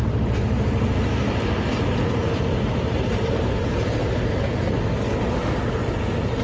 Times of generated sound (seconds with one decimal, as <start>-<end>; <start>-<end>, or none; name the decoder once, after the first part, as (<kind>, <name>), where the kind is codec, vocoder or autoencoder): 2.4-3.6 (vocoder, BigVGAN v2)